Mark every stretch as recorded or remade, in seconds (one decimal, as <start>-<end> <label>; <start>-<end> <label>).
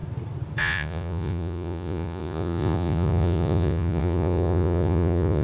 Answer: 0.0-0.6 recorded; 0.6-5.4 remade